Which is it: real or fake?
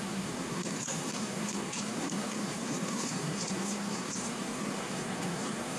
fake